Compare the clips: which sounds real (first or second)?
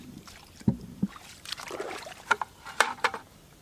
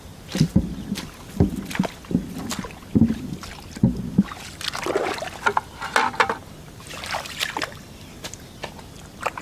second